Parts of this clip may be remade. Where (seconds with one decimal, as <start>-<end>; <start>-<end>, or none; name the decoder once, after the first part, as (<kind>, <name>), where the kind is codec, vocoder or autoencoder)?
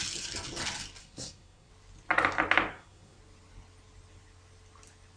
1.0-1.7 (codec, SNAC); 2.7-3.2